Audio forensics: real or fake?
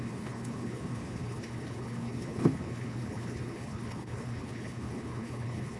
fake